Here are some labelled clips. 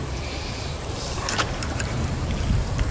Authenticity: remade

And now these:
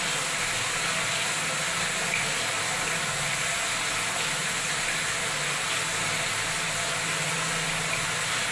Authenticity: recorded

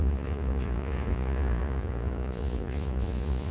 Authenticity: remade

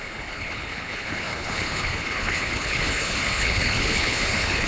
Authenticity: remade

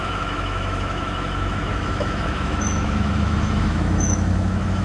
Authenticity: remade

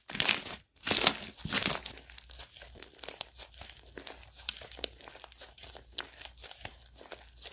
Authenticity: recorded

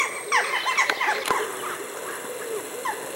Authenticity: recorded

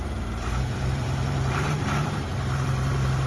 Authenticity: remade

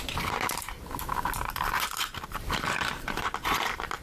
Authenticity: remade